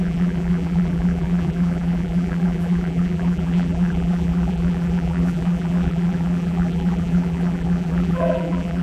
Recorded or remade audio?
remade